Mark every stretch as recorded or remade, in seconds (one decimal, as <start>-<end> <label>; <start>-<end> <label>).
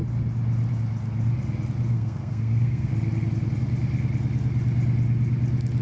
0.0-1.9 recorded; 1.9-2.9 remade; 2.9-5.8 recorded